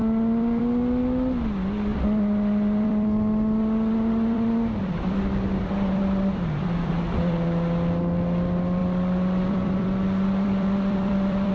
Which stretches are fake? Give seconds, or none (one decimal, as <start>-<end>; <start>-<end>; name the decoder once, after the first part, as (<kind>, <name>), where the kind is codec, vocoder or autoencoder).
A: 0.0-0.6 (vocoder, BigVGAN v2); 1.9-6.9; 8.8-11.5